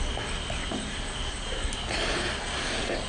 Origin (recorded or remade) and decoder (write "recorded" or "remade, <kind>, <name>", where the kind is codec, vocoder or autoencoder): recorded